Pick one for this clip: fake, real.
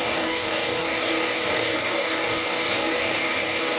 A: fake